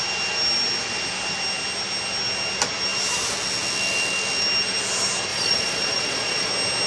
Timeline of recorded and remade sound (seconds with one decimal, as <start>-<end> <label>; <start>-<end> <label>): 0.0-5.3 recorded; 5.3-6.5 remade; 6.5-6.9 recorded